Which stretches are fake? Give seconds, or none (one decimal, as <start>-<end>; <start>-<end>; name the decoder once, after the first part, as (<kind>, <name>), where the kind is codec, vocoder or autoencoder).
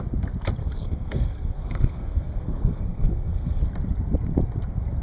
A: 0.6-3.6 (codec, SNAC)